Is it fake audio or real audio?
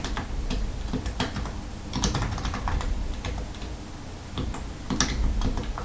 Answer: real